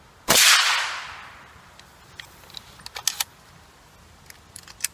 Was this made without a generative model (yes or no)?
yes